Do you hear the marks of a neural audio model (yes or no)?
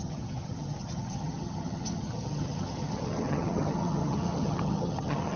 yes